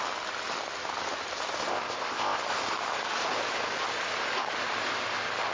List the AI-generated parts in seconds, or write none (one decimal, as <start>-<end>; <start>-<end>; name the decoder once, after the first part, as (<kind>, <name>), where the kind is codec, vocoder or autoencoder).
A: 1.7-2.4 (codec, ZipCodec)